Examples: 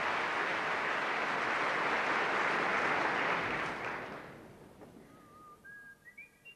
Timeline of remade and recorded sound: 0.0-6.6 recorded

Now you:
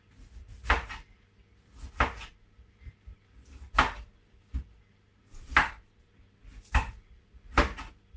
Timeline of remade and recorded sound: 0.0-8.2 recorded

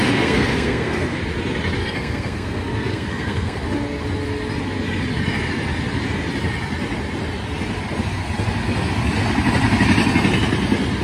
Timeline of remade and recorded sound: 0.0-1.2 remade; 1.2-1.8 recorded; 1.8-3.6 remade; 3.6-11.0 recorded

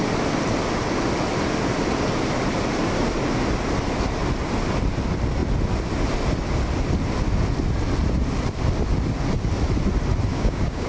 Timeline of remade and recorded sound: 0.0-10.3 recorded; 10.3-10.9 remade